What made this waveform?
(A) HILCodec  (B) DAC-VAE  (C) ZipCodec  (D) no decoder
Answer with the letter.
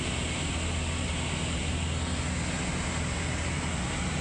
D